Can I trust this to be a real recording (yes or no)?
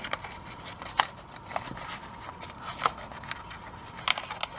yes